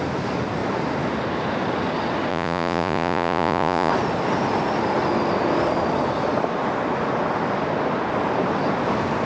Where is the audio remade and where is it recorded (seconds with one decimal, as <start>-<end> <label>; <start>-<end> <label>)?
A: 0.0-2.3 recorded; 2.3-3.9 remade; 3.9-9.2 recorded